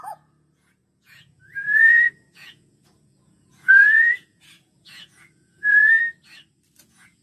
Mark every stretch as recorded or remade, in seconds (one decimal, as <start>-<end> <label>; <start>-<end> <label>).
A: 0.0-6.0 remade; 6.0-6.8 recorded; 6.8-7.2 remade